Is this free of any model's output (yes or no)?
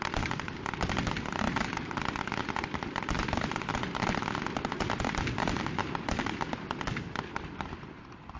yes